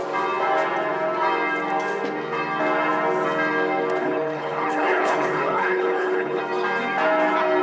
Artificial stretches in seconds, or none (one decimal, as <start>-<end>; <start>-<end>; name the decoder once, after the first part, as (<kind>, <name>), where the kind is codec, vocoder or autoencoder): 4.0-6.4 (codec, HILCodec)